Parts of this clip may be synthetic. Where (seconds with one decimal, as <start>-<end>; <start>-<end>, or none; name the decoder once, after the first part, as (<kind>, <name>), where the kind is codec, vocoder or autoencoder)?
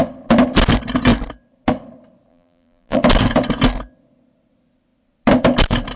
2.3-3.0 (vocoder, BigVGAN v2)